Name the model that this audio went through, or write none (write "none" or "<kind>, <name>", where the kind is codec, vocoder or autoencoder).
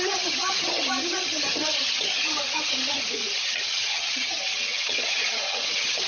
vocoder, HiFi-GAN